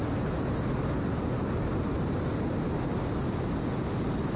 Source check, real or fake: real